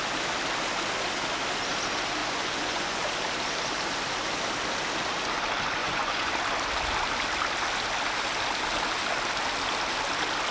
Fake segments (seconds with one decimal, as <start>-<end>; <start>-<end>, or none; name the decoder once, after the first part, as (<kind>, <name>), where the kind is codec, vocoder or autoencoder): 2.2-3.0 (vocoder, Vocos); 5.8-6.3